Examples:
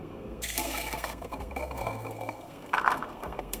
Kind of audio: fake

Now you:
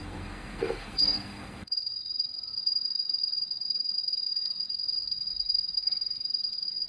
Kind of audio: fake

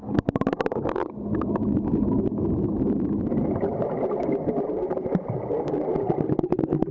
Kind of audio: real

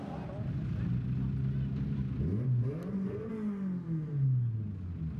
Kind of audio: real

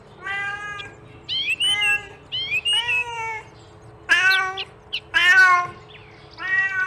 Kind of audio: real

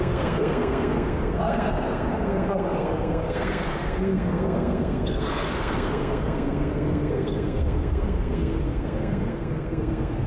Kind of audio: fake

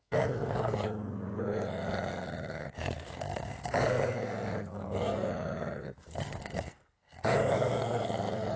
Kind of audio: fake